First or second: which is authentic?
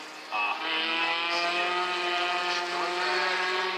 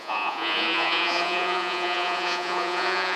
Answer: first